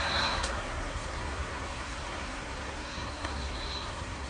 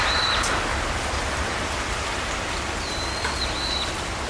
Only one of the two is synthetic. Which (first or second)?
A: first